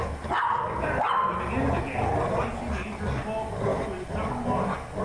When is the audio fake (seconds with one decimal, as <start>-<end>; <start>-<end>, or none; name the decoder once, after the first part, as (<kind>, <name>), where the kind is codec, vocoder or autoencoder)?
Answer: none